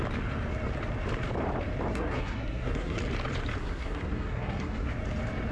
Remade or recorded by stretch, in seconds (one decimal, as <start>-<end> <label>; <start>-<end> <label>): 0.0-1.9 recorded; 1.9-3.0 remade; 3.0-3.6 recorded; 3.6-4.9 remade; 4.9-5.5 recorded